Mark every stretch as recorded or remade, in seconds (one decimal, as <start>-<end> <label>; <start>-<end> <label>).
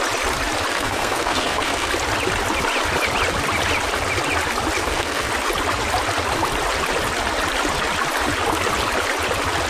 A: 0.0-0.7 recorded; 0.7-1.9 remade; 1.9-4.8 recorded; 4.8-5.3 remade; 5.3-9.7 recorded